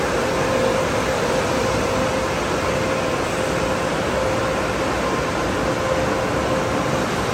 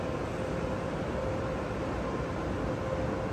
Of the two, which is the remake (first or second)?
second